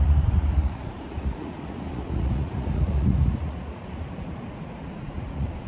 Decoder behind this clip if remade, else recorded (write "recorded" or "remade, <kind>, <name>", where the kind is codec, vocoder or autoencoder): remade, vocoder, Vocos